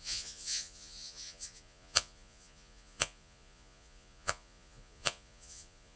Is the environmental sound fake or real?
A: fake